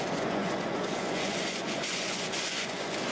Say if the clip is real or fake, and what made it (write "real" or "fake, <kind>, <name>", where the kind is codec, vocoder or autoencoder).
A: fake, vocoder, Vocos